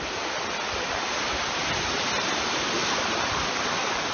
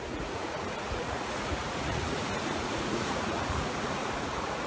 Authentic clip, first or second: first